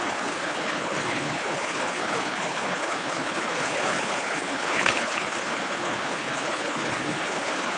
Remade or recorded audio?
remade